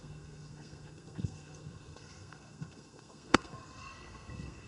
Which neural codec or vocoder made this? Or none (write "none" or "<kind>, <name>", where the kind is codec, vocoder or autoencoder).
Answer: codec, SNAC